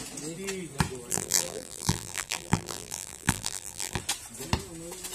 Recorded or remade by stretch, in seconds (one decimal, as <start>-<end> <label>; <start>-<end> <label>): 0.0-1.1 recorded; 1.1-4.0 remade; 4.0-5.1 recorded